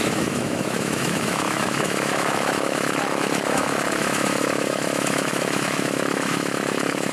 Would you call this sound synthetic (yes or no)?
yes